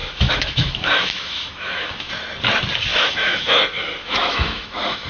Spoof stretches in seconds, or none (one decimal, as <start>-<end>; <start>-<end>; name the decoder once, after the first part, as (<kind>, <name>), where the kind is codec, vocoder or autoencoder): 0.0-2.1 (autoencoder, DAC-VAE); 2.9-3.6; 4.0-5.1